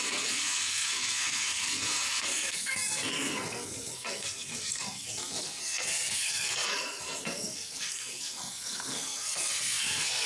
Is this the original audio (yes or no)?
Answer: no